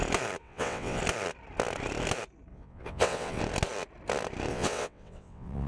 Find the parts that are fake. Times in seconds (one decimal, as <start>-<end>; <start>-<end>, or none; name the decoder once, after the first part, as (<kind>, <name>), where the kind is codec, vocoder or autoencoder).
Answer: 0.4-1.0 (vocoder, WaveNeXt); 2.5-3.4; 4.5-5.7